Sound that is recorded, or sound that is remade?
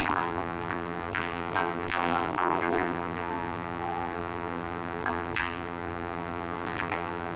remade